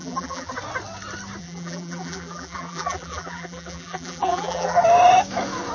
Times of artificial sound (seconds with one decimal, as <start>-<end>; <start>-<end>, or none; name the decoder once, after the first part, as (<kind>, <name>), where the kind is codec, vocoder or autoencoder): 0.0-0.5 (vocoder, BigVGAN v2); 1.4-4.8